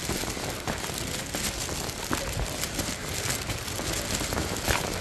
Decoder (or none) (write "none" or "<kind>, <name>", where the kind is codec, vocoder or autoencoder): none